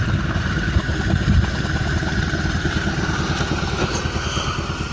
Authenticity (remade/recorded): recorded